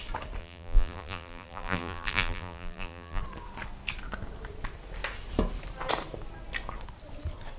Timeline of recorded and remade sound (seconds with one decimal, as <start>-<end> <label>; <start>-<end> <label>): 0.0-0.4 recorded; 0.4-3.2 remade; 3.2-7.6 recorded